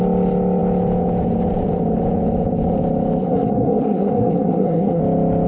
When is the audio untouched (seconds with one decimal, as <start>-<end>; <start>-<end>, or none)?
0.0-3.2; 5.0-5.5